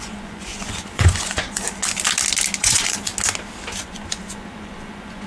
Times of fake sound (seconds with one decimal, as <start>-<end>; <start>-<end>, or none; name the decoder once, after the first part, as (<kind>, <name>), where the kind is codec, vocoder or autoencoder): 0.0-1.6 (vocoder, Vocos); 2.6-3.1; 3.8-5.3